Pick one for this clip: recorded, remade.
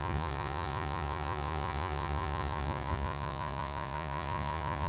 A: remade